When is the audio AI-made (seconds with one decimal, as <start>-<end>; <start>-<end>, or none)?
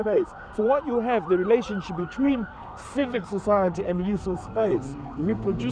0.0-0.6; 2.0-5.7